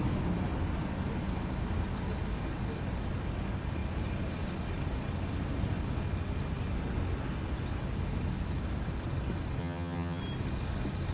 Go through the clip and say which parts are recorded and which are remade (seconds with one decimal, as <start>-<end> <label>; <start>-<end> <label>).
0.0-9.6 recorded; 9.6-10.2 remade; 10.2-11.1 recorded